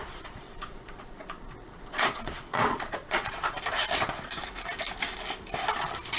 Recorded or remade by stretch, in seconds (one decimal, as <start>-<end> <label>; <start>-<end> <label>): 0.0-3.6 remade; 3.6-6.2 recorded